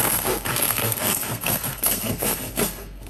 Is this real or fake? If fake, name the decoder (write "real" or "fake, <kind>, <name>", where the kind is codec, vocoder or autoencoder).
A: fake, codec, SNAC